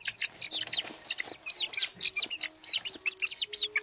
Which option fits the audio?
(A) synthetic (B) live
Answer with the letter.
B